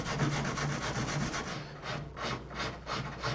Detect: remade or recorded recorded